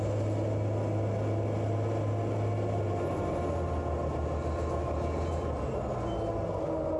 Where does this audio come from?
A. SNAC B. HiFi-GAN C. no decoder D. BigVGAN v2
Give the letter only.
C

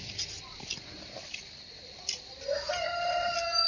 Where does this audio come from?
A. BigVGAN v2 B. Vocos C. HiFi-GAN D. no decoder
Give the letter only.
D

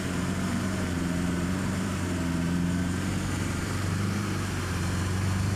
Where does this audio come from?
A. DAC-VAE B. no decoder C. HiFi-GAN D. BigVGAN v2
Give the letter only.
D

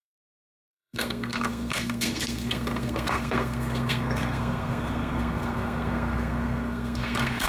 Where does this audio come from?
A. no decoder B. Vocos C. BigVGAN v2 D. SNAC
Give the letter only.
D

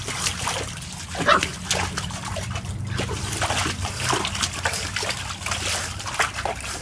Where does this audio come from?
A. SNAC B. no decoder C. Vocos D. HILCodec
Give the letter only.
B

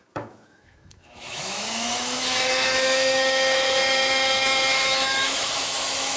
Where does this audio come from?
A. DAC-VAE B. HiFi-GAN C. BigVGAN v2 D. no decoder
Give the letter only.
A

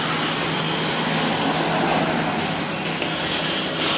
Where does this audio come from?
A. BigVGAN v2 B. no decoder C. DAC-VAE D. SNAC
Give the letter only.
B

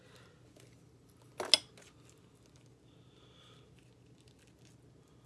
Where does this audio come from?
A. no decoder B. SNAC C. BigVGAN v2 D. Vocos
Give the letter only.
A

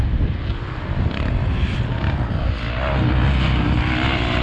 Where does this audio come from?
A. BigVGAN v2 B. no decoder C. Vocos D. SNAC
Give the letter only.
B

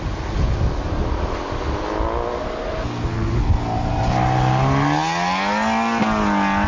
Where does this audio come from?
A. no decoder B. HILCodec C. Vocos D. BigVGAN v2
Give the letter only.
A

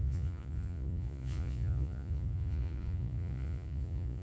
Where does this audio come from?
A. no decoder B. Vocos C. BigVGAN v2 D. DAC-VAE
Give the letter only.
B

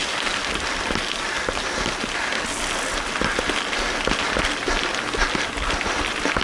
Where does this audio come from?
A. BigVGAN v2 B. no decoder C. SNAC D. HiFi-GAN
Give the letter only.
B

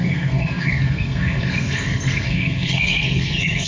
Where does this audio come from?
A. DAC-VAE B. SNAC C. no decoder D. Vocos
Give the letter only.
B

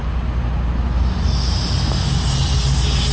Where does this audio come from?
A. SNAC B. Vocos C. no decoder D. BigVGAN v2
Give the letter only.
C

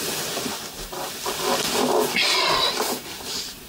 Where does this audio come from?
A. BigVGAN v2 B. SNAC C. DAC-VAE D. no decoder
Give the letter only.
D